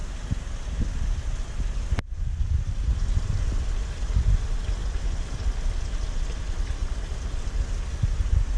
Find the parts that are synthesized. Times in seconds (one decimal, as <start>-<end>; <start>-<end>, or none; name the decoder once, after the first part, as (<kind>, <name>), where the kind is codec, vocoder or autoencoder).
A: none